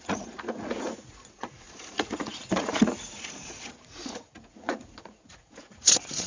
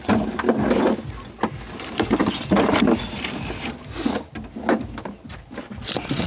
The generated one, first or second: first